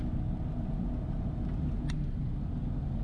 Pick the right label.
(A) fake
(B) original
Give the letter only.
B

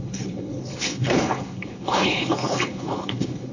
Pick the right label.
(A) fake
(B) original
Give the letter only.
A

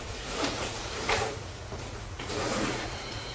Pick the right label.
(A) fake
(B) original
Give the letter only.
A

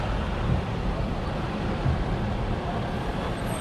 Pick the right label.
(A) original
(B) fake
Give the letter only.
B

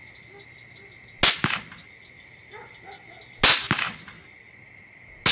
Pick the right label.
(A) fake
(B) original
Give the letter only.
B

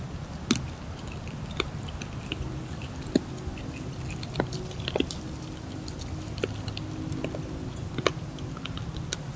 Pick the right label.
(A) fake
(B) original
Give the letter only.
B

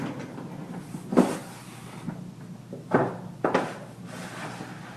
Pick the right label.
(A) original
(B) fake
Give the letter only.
A